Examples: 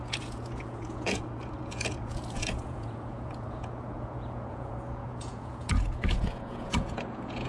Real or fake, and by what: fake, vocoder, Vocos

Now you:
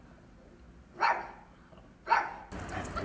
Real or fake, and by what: real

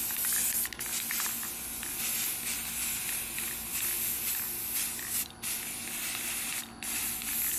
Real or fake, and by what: real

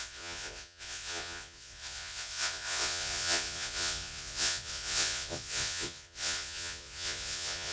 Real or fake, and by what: fake, vocoder, Vocos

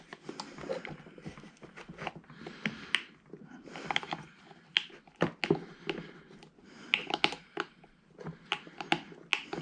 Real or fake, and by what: real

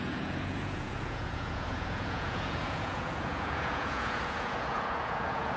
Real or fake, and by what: fake, vocoder, Vocos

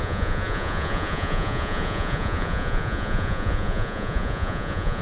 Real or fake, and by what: fake, vocoder, Vocos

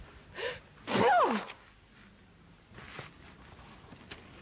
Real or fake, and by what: real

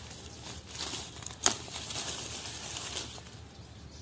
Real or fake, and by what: real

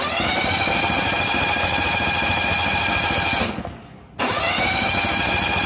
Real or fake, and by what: real